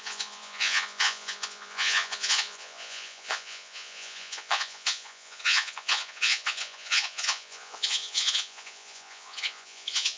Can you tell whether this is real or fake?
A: fake